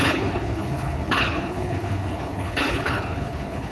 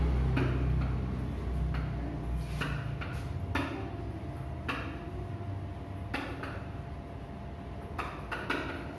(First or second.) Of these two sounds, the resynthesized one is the first